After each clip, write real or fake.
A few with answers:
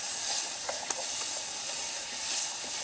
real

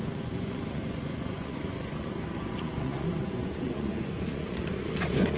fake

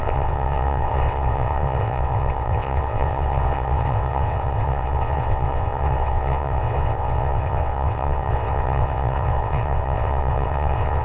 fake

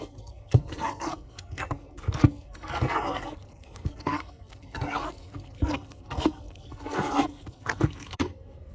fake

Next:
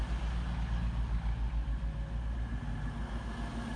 real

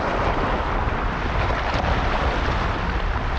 real